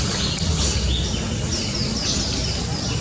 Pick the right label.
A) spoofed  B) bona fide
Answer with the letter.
B